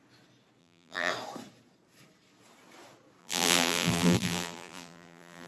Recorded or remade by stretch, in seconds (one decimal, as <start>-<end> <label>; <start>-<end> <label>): 0.0-0.6 recorded; 0.6-1.1 remade; 1.1-3.2 recorded; 3.2-5.5 remade